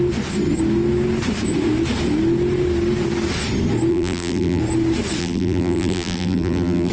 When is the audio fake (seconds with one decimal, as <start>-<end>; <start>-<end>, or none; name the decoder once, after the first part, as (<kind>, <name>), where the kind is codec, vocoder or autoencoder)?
3.9-4.6 (vocoder, BigVGAN v2); 5.2-6.9